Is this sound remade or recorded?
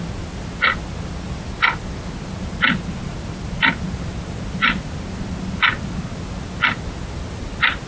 recorded